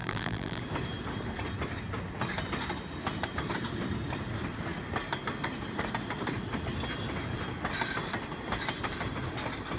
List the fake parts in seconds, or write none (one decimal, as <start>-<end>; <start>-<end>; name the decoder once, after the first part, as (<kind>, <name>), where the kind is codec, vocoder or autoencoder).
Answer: 0.0-0.6 (vocoder, BigVGAN v2)